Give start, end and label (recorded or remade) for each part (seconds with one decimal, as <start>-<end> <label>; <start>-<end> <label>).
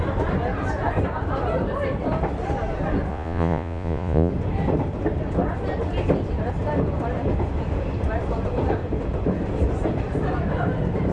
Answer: 0.0-3.1 recorded; 3.1-4.3 remade; 4.3-11.1 recorded